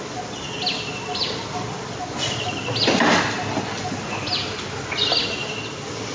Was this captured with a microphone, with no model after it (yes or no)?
yes